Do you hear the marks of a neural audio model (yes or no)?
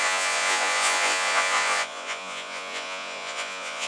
yes